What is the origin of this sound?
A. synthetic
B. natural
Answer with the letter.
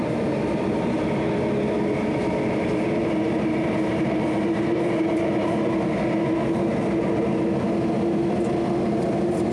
B